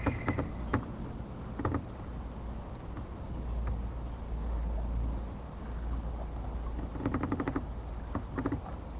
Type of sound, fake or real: real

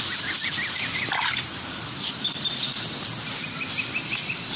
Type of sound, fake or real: real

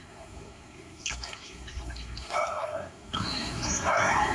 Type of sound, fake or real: fake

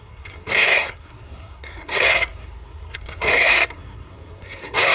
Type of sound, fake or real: fake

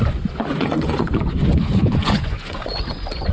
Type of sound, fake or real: fake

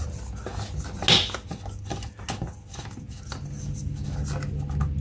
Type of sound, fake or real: real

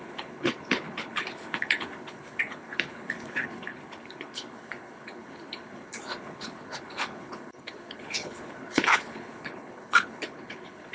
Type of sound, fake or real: fake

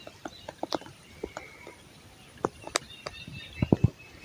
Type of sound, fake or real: real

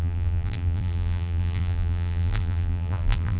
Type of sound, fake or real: fake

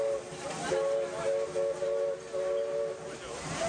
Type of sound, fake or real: real